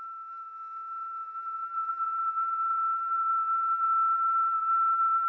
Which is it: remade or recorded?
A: recorded